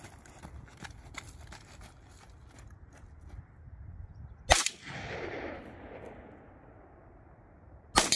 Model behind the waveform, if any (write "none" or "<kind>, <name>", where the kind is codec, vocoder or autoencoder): none